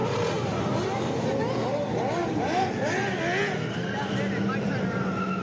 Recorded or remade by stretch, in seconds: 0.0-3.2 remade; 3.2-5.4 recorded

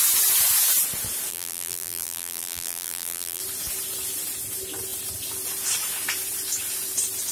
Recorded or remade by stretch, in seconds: 0.0-1.3 recorded; 1.3-3.4 remade; 3.4-7.3 recorded

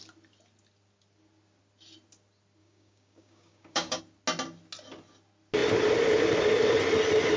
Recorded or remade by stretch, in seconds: 0.0-2.6 recorded; 2.6-4.0 remade; 4.0-7.4 recorded

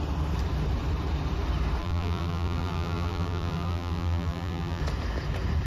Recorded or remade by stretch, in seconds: 0.0-1.8 recorded; 1.8-4.8 remade; 4.8-5.7 recorded